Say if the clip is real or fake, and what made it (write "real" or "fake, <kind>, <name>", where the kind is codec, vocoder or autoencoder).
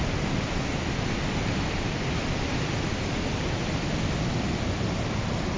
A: real